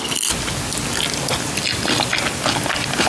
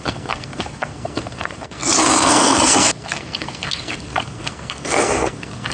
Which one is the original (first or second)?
first